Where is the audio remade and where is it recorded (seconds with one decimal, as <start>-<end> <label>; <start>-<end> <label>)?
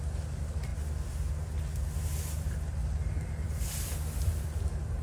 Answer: 0.0-5.0 recorded